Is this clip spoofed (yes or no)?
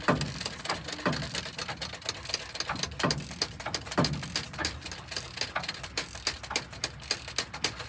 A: no